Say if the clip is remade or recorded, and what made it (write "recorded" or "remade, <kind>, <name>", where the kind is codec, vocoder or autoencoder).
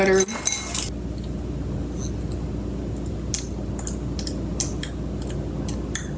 recorded